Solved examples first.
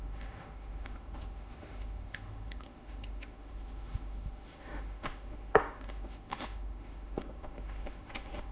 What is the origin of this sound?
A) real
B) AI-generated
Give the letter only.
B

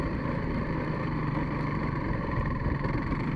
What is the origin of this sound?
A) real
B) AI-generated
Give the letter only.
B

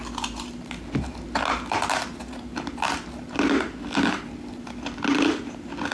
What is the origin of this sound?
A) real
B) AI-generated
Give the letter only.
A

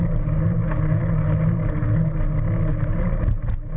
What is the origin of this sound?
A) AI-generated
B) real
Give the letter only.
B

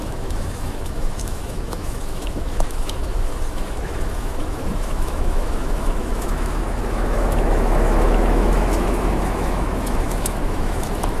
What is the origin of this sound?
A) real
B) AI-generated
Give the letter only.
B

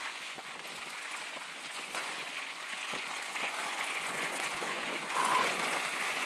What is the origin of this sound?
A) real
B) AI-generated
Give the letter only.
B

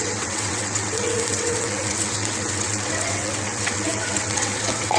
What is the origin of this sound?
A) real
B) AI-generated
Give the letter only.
B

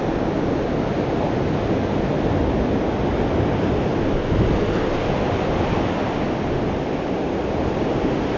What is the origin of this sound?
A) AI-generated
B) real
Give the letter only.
B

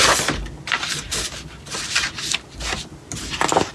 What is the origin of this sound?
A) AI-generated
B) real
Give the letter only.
B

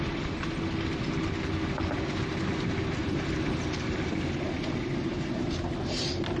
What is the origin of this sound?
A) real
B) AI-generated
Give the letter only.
A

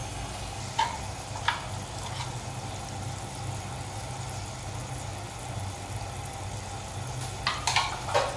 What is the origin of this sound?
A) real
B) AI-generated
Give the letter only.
A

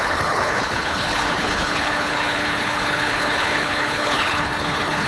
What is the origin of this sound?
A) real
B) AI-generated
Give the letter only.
B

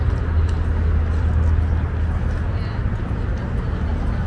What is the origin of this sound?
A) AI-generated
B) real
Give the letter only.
B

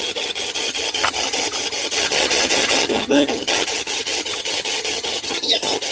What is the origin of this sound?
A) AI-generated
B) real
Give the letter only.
A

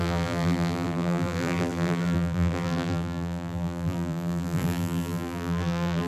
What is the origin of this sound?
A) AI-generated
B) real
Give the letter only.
A